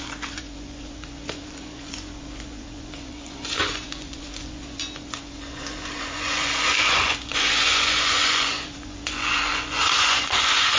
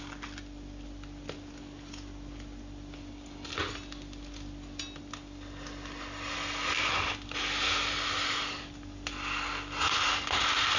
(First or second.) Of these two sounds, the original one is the second